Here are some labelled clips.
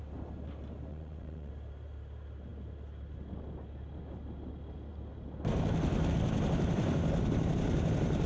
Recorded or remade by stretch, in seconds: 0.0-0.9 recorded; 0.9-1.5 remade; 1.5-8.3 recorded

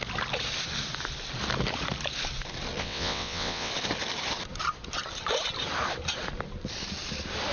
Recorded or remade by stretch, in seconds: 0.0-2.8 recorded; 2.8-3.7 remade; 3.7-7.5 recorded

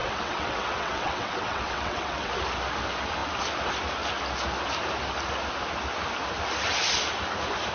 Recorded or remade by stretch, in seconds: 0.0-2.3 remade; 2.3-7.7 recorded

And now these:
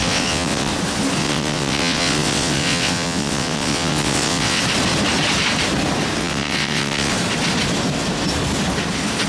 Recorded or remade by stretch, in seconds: 0.0-0.7 remade; 0.7-1.2 recorded; 1.2-4.6 remade; 4.6-6.2 recorded; 6.2-7.1 remade; 7.1-9.3 recorded